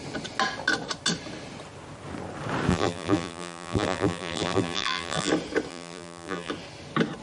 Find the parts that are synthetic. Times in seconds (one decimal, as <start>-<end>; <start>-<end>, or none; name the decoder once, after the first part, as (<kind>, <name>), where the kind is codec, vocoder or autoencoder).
2.7-5.3 (vocoder, BigVGAN v2); 5.7-6.5